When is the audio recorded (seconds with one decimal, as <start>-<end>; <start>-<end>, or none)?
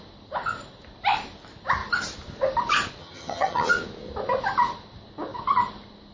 0.0-3.0; 3.7-6.1